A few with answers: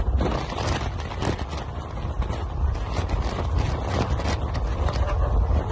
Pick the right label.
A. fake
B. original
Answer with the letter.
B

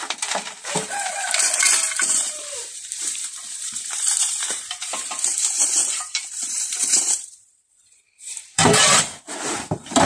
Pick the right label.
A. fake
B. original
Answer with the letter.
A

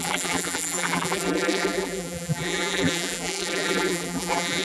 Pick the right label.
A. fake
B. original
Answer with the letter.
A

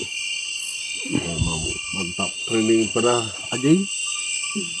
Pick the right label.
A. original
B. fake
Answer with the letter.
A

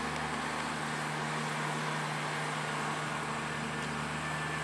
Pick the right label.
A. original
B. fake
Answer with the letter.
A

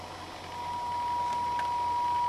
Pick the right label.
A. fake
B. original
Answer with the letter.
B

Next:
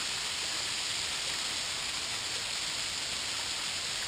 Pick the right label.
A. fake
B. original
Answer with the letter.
B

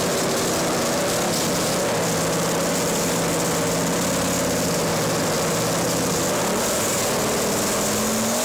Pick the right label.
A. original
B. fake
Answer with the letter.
A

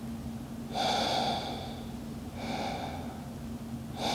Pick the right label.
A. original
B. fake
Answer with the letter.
A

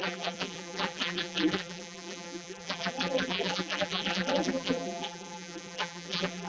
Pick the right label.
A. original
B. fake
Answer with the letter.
B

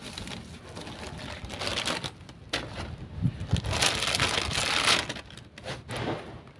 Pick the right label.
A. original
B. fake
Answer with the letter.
A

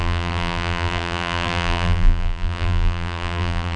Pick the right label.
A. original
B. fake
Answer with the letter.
B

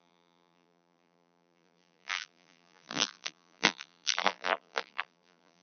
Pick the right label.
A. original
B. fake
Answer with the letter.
B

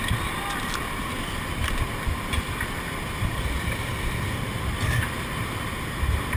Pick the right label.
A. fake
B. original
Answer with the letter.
B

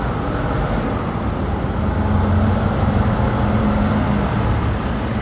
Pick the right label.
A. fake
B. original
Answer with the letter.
B